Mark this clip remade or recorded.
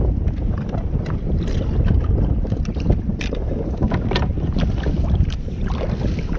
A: recorded